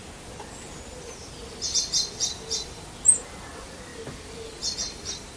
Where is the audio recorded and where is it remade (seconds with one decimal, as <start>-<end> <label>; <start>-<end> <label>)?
0.0-5.4 recorded